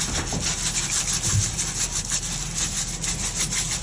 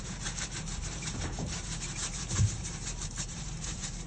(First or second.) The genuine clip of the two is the first